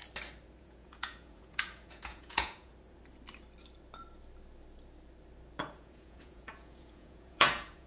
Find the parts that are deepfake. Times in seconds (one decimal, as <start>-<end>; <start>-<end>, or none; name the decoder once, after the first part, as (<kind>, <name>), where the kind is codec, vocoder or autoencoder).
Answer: 0.6-2.7 (vocoder, Vocos); 5.6-7.9